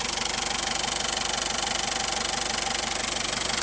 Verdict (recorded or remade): recorded